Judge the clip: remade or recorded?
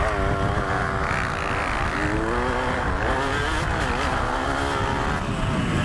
recorded